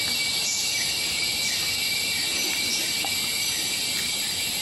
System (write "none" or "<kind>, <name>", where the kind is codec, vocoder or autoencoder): none